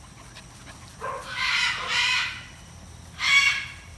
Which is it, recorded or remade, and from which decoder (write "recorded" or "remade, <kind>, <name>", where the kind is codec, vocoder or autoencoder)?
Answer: recorded